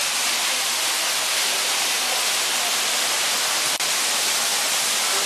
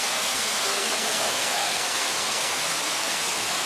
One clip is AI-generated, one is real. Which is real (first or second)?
first